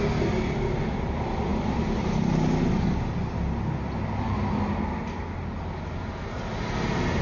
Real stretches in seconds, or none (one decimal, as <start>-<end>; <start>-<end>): 0.0-7.2

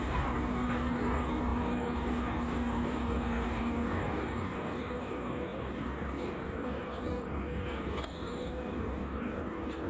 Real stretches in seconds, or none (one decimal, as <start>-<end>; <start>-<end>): none

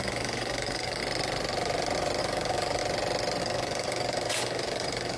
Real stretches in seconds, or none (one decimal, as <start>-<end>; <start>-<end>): 1.0-2.2; 2.8-3.4

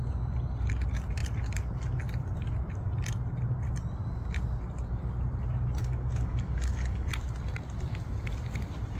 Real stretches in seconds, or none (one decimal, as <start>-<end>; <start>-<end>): 0.0-5.8; 7.1-9.0

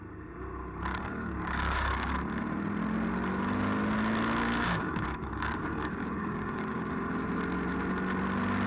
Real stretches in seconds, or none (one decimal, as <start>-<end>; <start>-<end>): 0.0-0.9; 2.1-4.4; 6.9-8.7

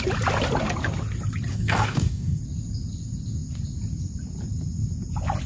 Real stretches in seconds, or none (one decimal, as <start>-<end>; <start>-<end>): 0.0-1.5; 2.4-5.5

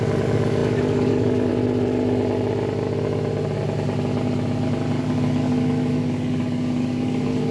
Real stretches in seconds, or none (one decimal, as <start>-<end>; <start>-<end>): 1.5-5.0

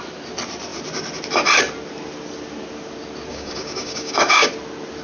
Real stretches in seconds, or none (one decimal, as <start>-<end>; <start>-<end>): 0.0-3.3; 4.5-5.0